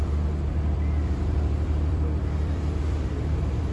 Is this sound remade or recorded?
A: remade